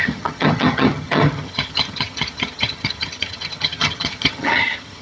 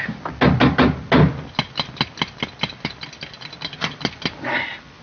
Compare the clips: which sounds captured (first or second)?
second